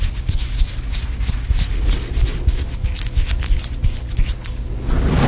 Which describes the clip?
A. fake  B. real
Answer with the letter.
B